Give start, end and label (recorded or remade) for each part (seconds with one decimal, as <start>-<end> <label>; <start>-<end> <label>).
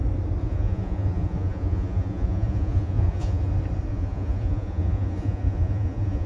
0.0-0.4 recorded; 0.4-3.5 remade; 3.5-3.9 recorded; 3.9-6.3 remade